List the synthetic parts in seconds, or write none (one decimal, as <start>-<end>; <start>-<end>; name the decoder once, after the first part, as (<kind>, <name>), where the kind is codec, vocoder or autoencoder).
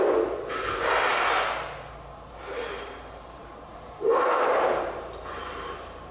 3.4-4.7 (vocoder, BigVGAN v2)